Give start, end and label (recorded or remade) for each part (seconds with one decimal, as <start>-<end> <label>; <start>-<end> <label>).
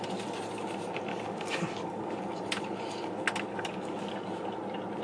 0.0-1.1 recorded; 1.1-2.2 remade; 2.2-3.5 recorded; 3.5-4.1 remade; 4.1-5.0 recorded